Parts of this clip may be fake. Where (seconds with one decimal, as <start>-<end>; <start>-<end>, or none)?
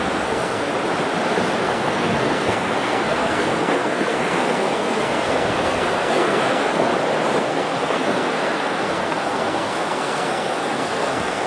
0.0-0.7; 1.6-6.9; 7.4-11.5